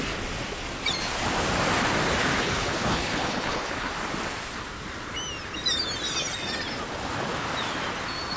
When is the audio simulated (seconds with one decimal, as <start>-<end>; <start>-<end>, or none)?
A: 2.4-3.9